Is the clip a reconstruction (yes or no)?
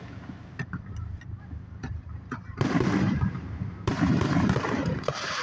yes